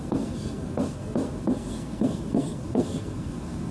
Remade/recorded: remade